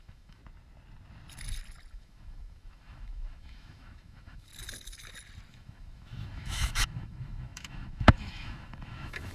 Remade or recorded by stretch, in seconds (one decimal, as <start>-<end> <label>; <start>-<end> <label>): 0.0-0.4 remade; 0.4-1.9 recorded; 1.9-4.5 remade; 4.5-5.5 recorded; 5.5-9.3 remade